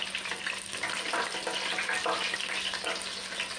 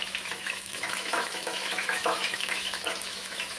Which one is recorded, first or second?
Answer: first